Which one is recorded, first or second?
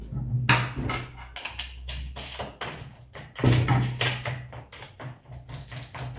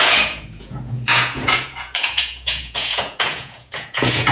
first